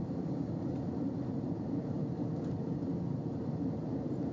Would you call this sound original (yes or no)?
no